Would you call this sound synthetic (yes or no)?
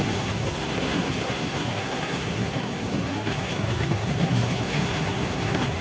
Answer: yes